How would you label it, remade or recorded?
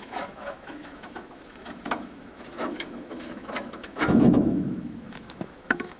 remade